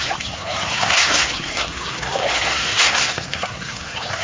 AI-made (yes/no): yes